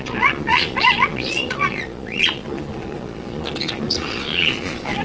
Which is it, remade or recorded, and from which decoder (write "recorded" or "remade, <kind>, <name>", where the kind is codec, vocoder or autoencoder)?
remade, vocoder, Vocos